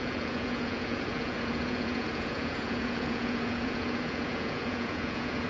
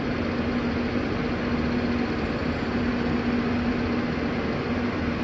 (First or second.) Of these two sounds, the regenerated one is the first